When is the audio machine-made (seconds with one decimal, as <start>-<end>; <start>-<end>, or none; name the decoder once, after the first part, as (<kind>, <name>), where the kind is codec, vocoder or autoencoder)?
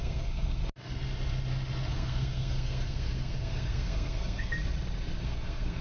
0.0-0.6 (codec, SNAC); 1.9-4.6; 5.2-5.8